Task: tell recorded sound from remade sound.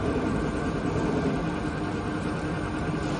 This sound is recorded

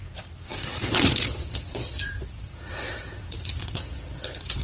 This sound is remade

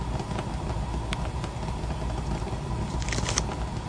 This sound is recorded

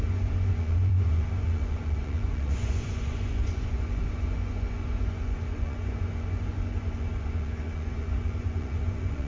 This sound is remade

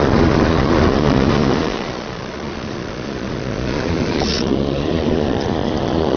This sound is remade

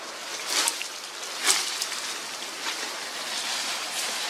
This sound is recorded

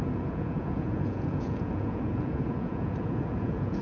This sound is remade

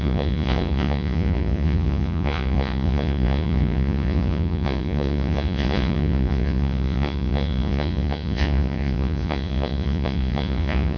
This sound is remade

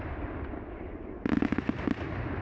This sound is recorded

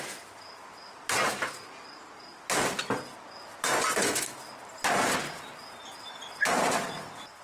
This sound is recorded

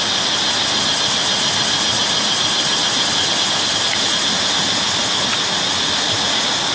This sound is recorded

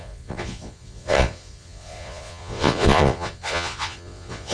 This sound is remade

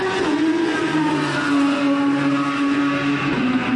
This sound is remade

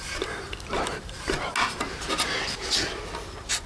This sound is recorded